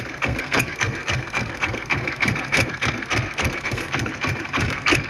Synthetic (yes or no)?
yes